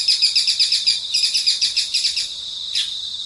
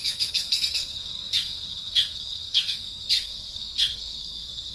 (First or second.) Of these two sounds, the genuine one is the first